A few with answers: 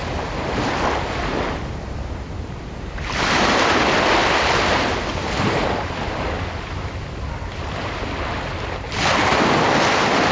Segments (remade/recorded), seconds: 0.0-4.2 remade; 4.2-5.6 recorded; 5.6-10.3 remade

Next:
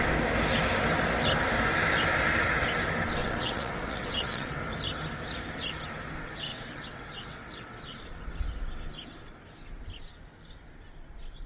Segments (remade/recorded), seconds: 0.0-3.2 recorded; 3.2-4.6 remade; 4.6-6.5 recorded; 6.5-8.0 remade; 8.0-11.5 recorded

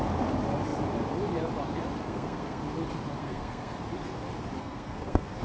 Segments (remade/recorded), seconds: 0.0-2.0 recorded; 2.0-2.6 remade; 2.6-3.2 recorded; 3.2-3.8 remade; 3.8-4.6 recorded; 4.6-5.4 remade

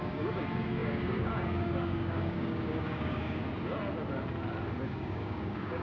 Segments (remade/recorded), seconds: 0.0-3.4 remade; 3.4-4.9 recorded; 4.9-5.8 remade

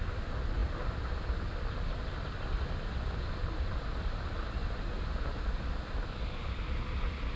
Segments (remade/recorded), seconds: 0.0-4.6 remade; 4.6-5.7 recorded; 5.7-7.4 remade

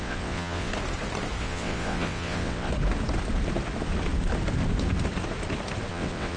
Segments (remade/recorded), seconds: 0.0-0.7 remade; 0.7-1.4 recorded; 1.4-2.7 remade; 2.7-5.9 recorded; 5.9-6.4 remade

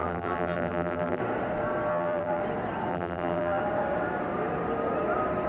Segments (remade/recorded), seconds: 0.0-1.2 remade; 1.2-1.9 recorded; 1.9-2.4 remade; 2.4-2.9 recorded; 2.9-3.6 remade; 3.6-5.5 recorded